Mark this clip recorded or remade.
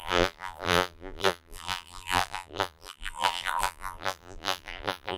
remade